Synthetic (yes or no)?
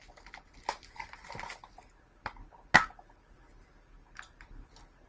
no